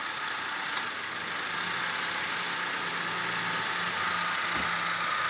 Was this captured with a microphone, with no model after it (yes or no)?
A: yes